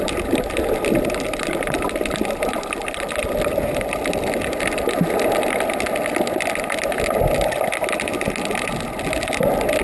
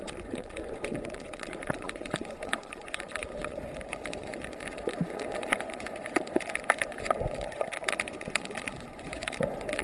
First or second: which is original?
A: first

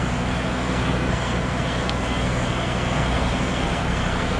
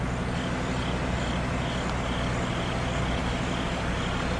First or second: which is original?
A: second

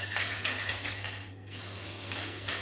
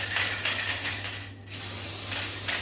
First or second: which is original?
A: second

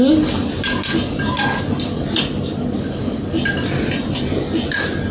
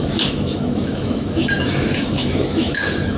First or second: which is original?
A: first